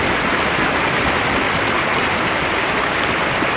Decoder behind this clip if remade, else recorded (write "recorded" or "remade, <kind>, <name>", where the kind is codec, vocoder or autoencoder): recorded